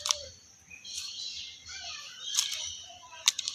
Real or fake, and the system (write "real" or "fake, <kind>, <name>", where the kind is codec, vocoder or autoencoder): fake, vocoder, BigVGAN v2